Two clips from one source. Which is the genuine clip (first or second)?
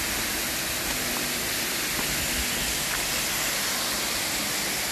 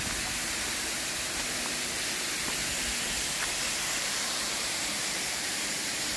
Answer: first